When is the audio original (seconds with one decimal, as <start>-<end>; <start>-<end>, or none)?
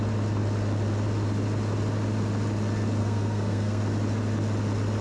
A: 0.0-3.0; 3.8-5.0